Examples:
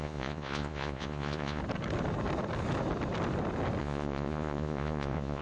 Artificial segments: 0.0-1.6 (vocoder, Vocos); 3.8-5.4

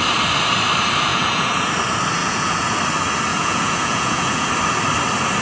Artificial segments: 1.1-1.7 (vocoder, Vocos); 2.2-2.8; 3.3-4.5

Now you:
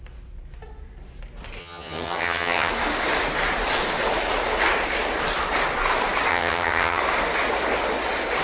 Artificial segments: 1.6-2.7 (vocoder, HiFi-GAN); 6.3-7.0

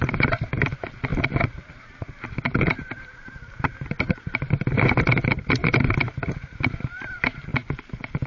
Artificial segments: 0.0-1.1 (vocoder, BigVGAN v2); 1.7-7.5

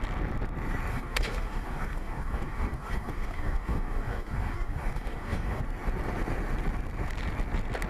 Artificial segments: 0.9-5.6 (codec, DAC)